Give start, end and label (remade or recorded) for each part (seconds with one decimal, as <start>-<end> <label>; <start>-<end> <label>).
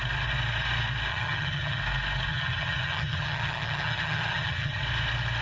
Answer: 0.0-1.1 recorded; 1.1-1.8 remade; 1.8-2.3 recorded; 2.3-4.8 remade; 4.8-5.4 recorded